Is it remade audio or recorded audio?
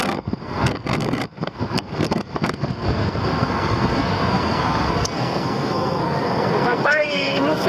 remade